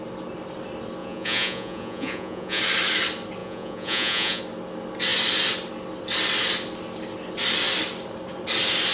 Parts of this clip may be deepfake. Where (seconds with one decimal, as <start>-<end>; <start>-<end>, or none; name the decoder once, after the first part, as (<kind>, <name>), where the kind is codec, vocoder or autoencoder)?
1.0-2.6 (vocoder, Vocos); 3.4-4.4